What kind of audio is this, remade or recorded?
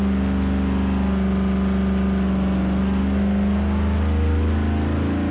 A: recorded